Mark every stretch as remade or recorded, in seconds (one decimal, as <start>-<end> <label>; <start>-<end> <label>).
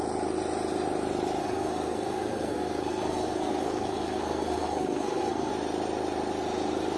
0.0-1.4 recorded; 1.4-5.5 remade; 5.5-7.0 recorded